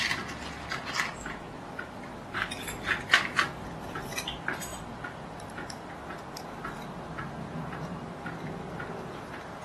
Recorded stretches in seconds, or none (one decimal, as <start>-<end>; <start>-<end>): 0.0-1.1; 1.6-4.7; 5.9-9.6